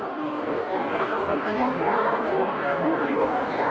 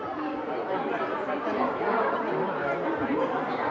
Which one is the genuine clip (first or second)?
second